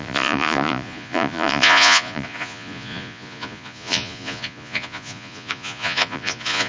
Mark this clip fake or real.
fake